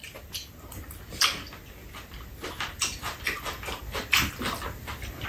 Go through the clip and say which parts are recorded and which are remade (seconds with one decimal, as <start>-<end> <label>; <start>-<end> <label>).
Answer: 0.0-5.3 recorded